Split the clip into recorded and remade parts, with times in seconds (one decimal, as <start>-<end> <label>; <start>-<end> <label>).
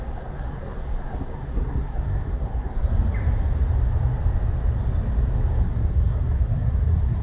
0.0-2.9 remade; 2.9-5.6 recorded; 5.6-7.2 remade